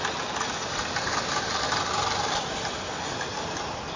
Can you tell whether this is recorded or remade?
recorded